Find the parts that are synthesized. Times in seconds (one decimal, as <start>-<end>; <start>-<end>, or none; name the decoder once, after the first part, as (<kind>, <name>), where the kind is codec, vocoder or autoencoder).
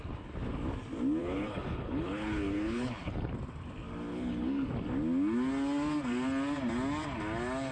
1.2-3.3 (codec, HILCodec); 4.1-4.7